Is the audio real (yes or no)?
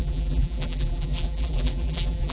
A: no